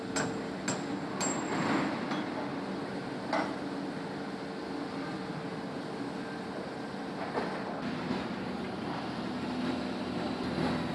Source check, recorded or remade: recorded